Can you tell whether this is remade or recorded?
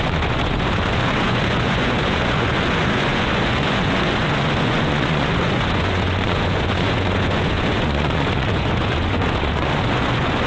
remade